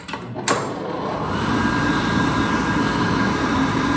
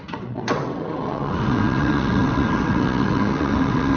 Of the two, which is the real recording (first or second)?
first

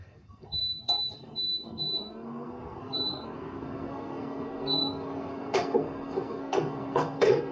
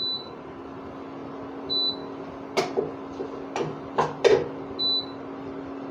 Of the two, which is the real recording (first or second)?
second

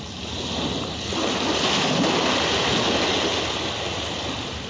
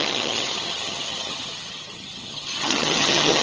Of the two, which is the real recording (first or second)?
first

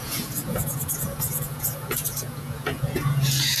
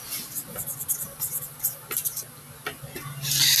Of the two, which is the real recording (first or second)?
second